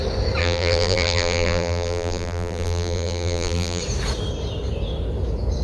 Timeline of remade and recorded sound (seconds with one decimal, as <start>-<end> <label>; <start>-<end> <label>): 0.0-0.4 recorded; 0.4-3.8 remade; 3.8-5.6 recorded